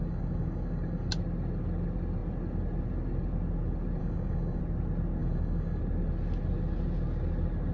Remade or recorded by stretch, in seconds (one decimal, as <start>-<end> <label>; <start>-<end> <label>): 0.0-1.1 remade; 1.1-4.0 recorded; 4.0-4.6 remade; 4.6-5.2 recorded; 5.2-5.8 remade; 5.8-7.7 recorded